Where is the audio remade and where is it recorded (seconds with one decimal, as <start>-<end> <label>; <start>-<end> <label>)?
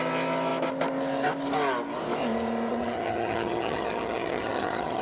0.0-2.7 recorded; 2.7-5.0 remade